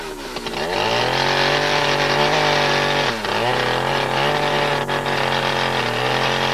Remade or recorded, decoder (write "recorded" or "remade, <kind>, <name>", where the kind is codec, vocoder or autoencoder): recorded